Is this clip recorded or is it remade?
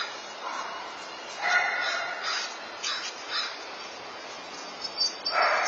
recorded